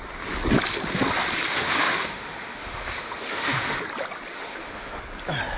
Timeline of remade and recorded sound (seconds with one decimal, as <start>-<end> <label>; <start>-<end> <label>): 0.0-1.5 recorded; 1.5-3.8 remade; 3.8-4.3 recorded; 4.3-5.0 remade; 5.0-5.6 recorded

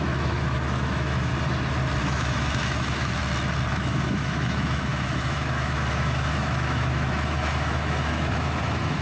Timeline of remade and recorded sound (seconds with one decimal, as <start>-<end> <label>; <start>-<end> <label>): 0.0-1.3 remade; 1.3-2.0 recorded; 2.0-3.2 remade; 3.2-3.7 recorded; 3.7-9.0 remade

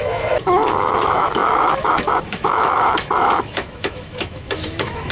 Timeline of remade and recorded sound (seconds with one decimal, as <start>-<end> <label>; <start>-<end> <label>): 0.0-5.1 remade

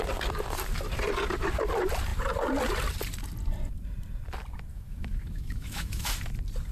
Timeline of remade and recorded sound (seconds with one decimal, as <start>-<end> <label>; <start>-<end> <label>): 0.0-4.7 recorded; 4.7-6.1 remade; 6.1-6.7 recorded